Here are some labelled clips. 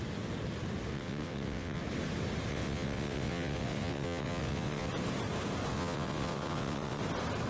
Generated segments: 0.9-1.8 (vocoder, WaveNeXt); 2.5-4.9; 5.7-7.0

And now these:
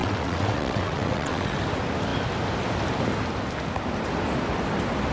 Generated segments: 0.0-1.6 (vocoder, WaveNeXt)

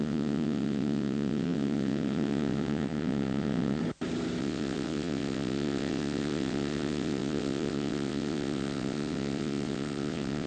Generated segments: 0.0-3.8 (vocoder, WaveNeXt); 4.4-10.5

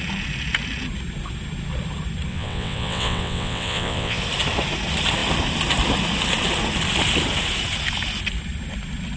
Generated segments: 2.3-4.2 (vocoder, WaveNeXt)

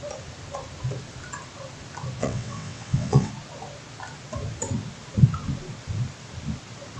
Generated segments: 2.2-3.3 (vocoder, WaveNeXt)

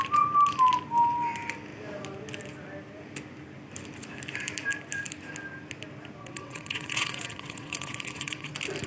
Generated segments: 6.2-8.5 (vocoder, WaveNeXt)

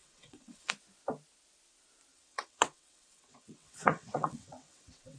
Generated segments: 0.0-0.7 (vocoder, WaveNeXt); 2.1-5.2